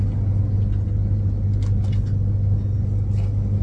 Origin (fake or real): real